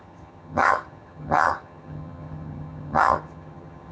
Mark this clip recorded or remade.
remade